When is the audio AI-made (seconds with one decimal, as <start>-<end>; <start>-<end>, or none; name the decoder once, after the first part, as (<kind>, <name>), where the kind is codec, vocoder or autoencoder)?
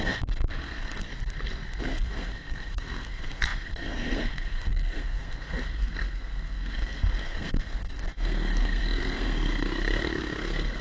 0.0-1.1 (codec, SNAC); 1.8-10.8